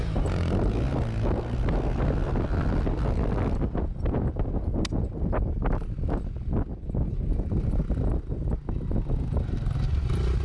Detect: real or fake real